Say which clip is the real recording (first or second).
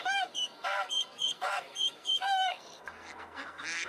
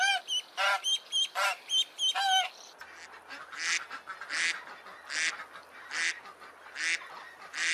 second